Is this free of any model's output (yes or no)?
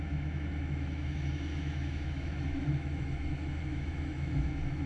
no